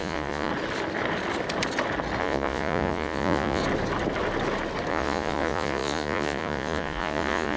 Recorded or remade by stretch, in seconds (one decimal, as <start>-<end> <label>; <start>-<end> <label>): 0.0-0.5 remade; 0.5-2.2 recorded; 2.2-3.6 remade; 3.6-4.9 recorded; 4.9-7.6 remade